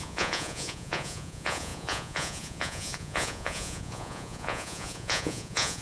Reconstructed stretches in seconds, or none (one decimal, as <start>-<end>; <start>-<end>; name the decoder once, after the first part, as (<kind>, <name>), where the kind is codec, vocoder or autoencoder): 0.0-5.8 (vocoder, Vocos)